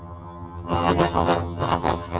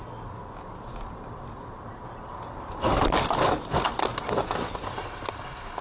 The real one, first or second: second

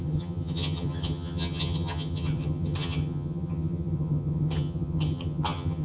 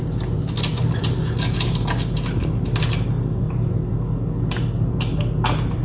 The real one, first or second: second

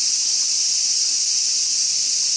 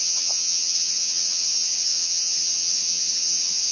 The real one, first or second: first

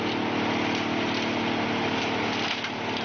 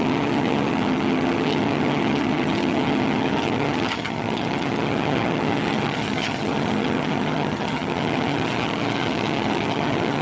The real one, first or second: first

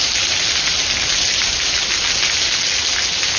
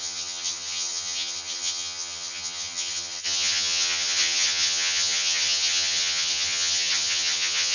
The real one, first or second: first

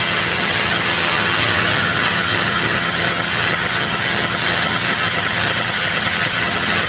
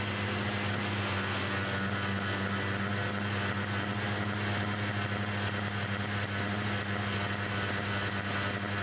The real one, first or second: second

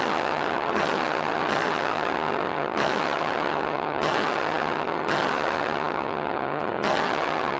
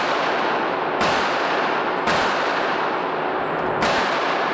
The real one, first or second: second